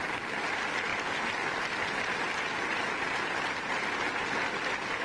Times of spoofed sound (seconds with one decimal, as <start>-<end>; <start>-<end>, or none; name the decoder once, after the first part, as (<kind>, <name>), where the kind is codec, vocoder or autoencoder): none